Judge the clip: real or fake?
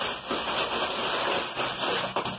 real